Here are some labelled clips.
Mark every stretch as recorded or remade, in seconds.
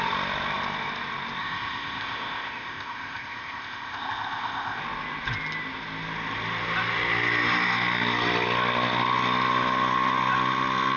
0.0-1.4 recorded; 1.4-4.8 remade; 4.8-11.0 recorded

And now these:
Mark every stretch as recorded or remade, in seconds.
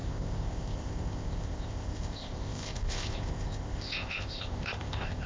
0.0-5.3 remade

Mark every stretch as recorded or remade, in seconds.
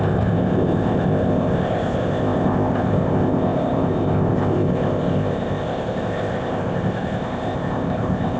0.0-8.4 remade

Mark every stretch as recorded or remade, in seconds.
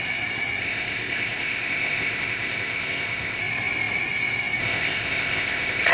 0.0-0.6 recorded; 0.6-3.4 remade; 3.4-4.6 recorded; 4.6-5.9 remade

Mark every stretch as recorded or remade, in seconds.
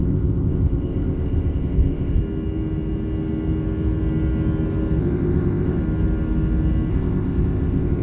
0.0-2.2 remade; 2.2-5.0 recorded; 5.0-5.8 remade; 5.8-6.9 recorded; 6.9-8.0 remade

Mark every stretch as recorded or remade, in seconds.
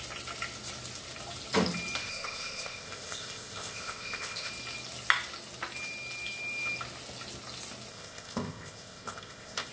0.0-2.0 recorded; 2.0-4.5 remade; 4.5-7.9 recorded; 7.9-9.7 remade